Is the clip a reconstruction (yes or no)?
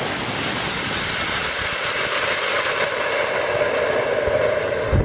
no